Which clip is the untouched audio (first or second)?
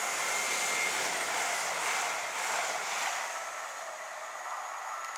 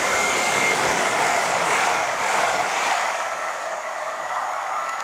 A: first